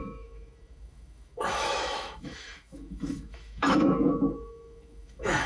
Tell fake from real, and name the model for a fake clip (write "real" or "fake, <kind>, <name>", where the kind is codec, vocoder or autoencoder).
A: fake, autoencoder, DAC-VAE